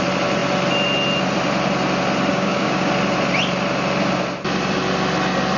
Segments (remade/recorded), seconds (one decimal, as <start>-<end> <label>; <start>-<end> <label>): 0.0-2.3 recorded; 2.3-2.9 remade; 2.9-5.6 recorded